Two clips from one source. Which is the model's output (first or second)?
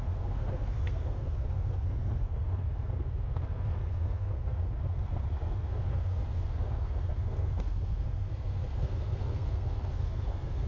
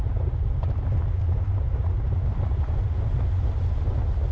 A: first